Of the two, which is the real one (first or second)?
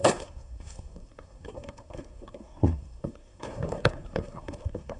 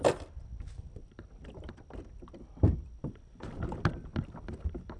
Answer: second